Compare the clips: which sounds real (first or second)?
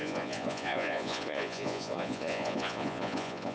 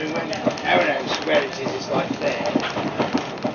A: second